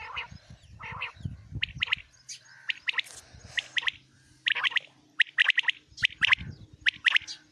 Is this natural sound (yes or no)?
yes